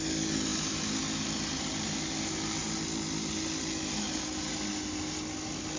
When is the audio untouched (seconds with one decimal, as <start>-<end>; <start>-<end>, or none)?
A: 0.0-5.8